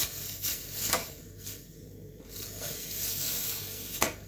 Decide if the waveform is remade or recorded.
remade